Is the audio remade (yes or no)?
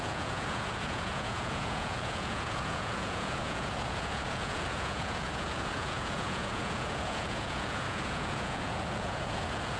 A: yes